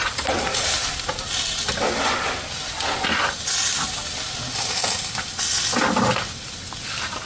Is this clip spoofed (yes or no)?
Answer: no